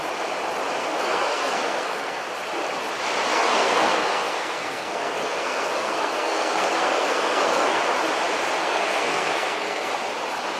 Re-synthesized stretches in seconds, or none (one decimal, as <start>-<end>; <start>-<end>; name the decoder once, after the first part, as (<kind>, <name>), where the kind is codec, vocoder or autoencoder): 0.8-2.2 (codec, SNAC); 3.3-7.8; 8.6-9.9